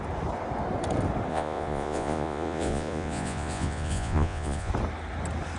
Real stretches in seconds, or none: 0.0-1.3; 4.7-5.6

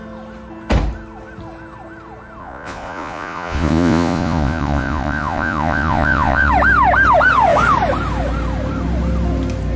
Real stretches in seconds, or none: 0.0-2.4; 6.5-9.8